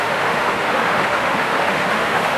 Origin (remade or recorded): remade